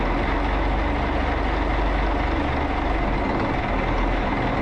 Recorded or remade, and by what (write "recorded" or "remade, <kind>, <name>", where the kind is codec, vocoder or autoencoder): recorded